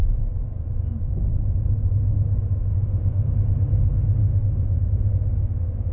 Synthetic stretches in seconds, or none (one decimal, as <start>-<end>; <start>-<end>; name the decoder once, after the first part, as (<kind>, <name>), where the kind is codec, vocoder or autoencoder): 2.7-3.3 (autoencoder, DAC-VAE); 4.2-5.1